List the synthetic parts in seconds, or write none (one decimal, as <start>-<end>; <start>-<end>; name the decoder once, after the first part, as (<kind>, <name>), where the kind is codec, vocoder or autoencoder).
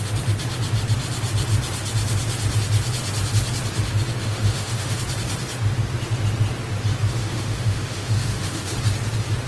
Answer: 4.2-5.0 (autoencoder, DAC-VAE); 7.2-8.8